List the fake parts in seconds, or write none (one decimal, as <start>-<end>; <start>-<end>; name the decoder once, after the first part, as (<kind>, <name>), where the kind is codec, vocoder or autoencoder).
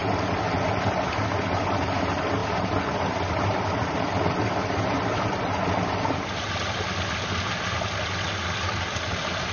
none